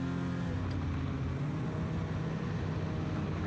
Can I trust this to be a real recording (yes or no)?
yes